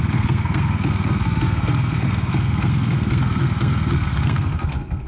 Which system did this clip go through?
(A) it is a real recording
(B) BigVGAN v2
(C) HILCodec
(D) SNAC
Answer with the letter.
D